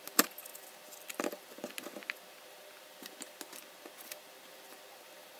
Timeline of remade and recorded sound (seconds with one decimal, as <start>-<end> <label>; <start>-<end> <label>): 0.0-5.4 recorded